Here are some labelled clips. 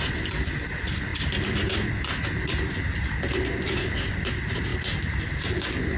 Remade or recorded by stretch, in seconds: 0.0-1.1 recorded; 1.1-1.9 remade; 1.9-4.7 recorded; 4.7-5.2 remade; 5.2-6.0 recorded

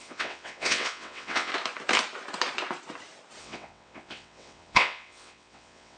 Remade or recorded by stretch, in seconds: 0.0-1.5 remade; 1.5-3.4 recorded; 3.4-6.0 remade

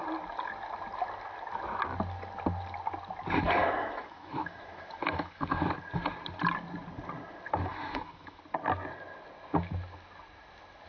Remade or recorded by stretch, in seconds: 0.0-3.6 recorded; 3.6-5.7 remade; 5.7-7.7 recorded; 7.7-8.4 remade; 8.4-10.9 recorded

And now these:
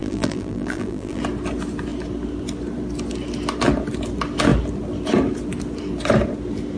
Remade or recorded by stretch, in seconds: 0.0-1.2 remade; 1.2-6.8 recorded